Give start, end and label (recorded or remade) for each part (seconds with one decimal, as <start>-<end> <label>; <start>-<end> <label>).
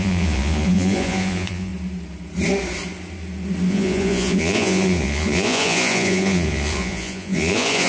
0.0-1.7 remade; 1.7-3.7 recorded; 3.7-7.9 remade